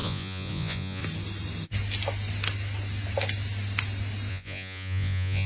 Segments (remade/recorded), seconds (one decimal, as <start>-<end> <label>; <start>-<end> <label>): 0.0-1.0 remade; 1.0-4.3 recorded; 4.3-5.5 remade

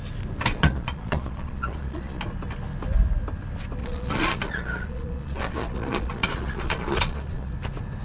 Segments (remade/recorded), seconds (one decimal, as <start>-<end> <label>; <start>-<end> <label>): 0.0-0.5 recorded; 0.5-2.2 remade; 2.2-3.8 recorded; 3.8-7.5 remade; 7.5-8.0 recorded

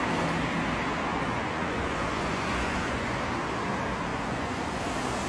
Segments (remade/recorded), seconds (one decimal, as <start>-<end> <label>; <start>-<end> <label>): 0.0-1.1 recorded; 1.1-3.2 remade; 3.2-4.1 recorded; 4.1-4.8 remade; 4.8-5.3 recorded

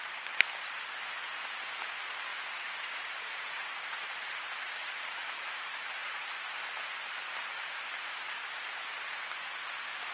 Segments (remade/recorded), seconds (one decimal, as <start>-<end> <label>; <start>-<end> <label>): 0.0-2.3 recorded; 2.3-6.6 remade; 6.6-10.1 recorded

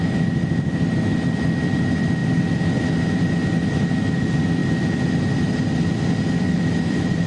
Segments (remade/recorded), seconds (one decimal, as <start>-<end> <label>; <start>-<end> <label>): 0.0-7.3 recorded

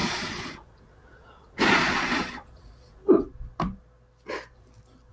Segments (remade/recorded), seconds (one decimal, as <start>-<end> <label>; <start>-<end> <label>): 0.0-3.1 remade; 3.1-5.1 recorded

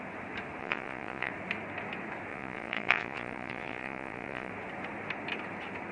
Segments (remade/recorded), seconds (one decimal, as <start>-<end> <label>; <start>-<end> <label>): 0.0-0.6 recorded; 0.6-1.3 remade; 1.3-2.3 recorded; 2.3-4.5 remade; 4.5-5.9 recorded

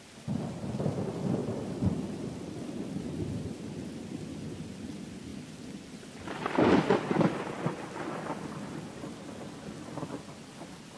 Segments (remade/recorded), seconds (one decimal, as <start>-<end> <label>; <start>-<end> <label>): 0.0-11.0 recorded